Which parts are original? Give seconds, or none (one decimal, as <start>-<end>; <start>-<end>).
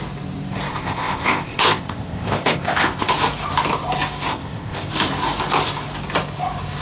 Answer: 0.0-0.7; 3.1-4.3; 4.9-6.8